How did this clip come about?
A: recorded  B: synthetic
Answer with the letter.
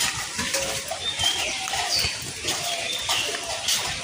B